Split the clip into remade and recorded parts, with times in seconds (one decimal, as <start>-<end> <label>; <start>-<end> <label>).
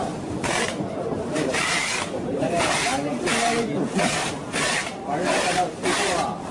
0.0-2.9 remade; 2.9-4.0 recorded; 4.0-4.4 remade; 4.4-5.0 recorded; 5.0-6.5 remade